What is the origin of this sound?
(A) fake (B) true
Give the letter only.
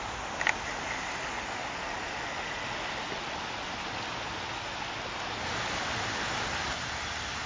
B